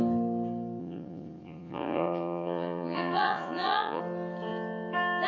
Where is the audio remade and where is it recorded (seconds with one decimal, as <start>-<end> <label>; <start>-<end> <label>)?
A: 0.0-0.8 recorded; 0.8-4.0 remade; 4.0-5.3 recorded